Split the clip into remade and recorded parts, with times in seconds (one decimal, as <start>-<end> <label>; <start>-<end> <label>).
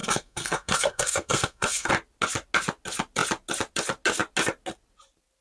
0.0-1.9 remade; 1.9-5.4 recorded